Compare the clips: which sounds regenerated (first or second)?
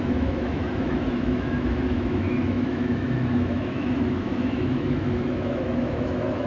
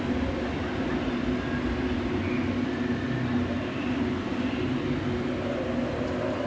first